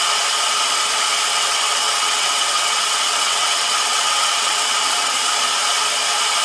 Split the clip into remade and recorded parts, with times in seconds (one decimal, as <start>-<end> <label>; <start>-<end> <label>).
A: 0.0-1.3 recorded; 1.3-5.1 remade; 5.1-6.4 recorded